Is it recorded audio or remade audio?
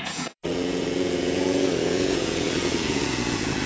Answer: remade